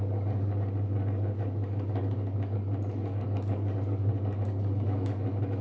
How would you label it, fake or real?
fake